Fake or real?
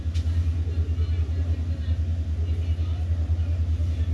real